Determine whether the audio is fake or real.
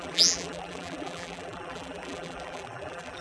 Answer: fake